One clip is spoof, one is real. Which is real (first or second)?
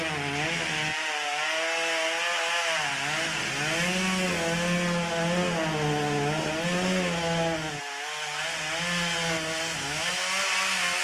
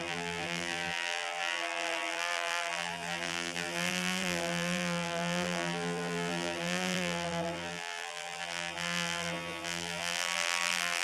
first